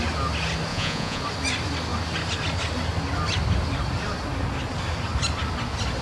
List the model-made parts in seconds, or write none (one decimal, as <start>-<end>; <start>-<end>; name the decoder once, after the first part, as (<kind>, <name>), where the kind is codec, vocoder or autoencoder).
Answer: 0.7-1.2 (vocoder, Vocos)